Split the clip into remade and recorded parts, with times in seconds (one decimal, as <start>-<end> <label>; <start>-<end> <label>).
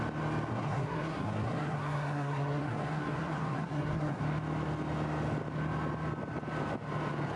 0.0-0.5 recorded; 0.5-4.2 remade; 4.2-7.4 recorded